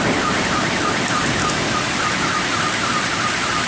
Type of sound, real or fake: real